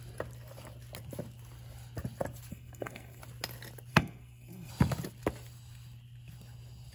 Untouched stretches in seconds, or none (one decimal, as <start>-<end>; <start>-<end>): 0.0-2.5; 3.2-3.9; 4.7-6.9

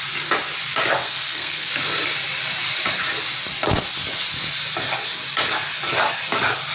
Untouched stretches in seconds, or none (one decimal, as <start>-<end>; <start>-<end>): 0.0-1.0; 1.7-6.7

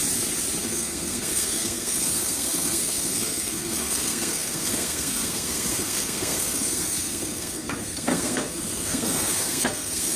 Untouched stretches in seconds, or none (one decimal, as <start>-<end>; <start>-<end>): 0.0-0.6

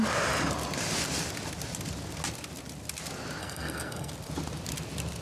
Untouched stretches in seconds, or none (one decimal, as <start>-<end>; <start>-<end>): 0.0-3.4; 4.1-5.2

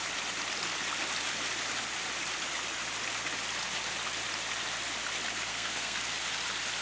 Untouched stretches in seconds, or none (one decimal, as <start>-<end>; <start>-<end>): 0.0-5.5; 6.0-6.8

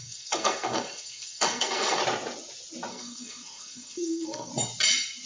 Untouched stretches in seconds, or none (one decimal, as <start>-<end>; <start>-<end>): 2.0-2.9; 4.5-5.3

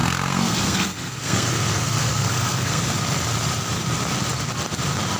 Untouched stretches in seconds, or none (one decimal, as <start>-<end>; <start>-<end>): 2.8-5.2